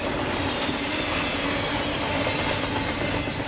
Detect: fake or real real